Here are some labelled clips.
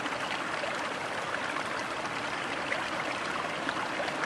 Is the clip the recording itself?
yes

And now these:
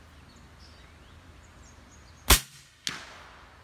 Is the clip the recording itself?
yes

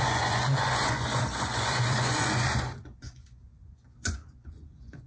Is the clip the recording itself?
no